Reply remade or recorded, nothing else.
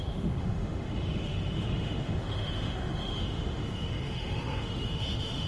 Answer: remade